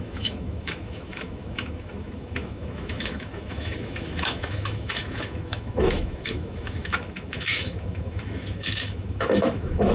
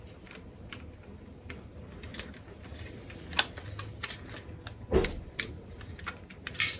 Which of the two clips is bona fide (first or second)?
second